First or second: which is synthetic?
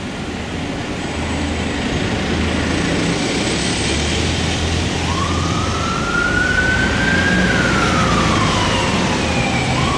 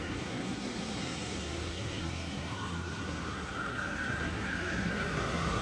second